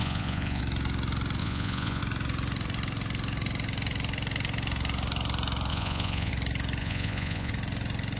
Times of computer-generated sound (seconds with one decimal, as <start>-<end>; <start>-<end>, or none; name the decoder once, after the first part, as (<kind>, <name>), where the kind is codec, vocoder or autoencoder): 0.0-0.6 (vocoder, Vocos); 1.4-2.0; 5.7-6.3; 6.8-7.5